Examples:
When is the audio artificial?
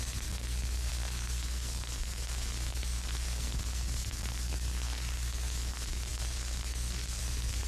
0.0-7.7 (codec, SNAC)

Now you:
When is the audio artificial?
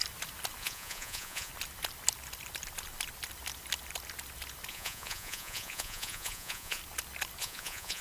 0.6-1.5 (vocoder, Vocos); 4.7-6.8; 7.4-8.0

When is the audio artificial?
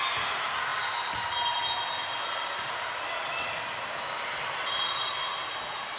none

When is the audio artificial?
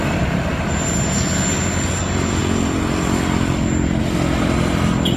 none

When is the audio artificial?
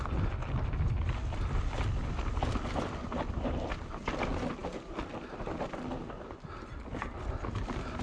none